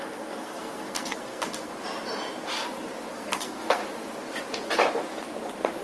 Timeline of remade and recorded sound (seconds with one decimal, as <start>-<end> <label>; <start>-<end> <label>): 0.0-1.7 remade; 1.7-3.1 recorded; 3.1-3.8 remade; 3.8-5.8 recorded